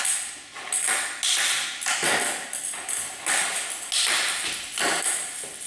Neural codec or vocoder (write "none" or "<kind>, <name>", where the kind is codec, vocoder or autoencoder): none